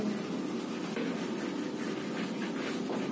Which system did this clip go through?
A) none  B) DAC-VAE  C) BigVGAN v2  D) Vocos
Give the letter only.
A